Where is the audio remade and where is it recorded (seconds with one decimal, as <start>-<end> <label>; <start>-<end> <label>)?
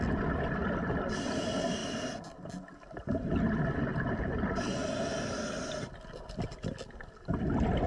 0.0-7.9 recorded